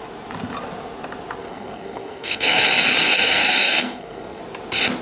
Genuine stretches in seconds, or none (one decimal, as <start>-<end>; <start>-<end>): 0.0-1.4; 2.6-3.0; 4.4-5.0

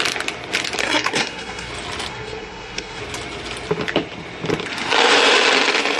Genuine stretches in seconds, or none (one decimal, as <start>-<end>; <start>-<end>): 0.0-0.8; 1.7-2.1; 3.0-6.0

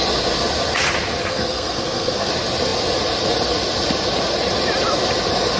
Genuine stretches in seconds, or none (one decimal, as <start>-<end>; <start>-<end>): 0.0-1.2; 2.3-5.6

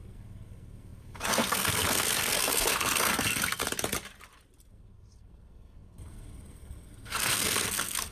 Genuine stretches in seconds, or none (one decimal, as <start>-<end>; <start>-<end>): 3.6-4.7

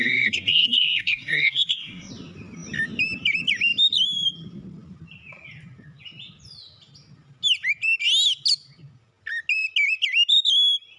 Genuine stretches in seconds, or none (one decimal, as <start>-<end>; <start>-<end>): 2.1-11.0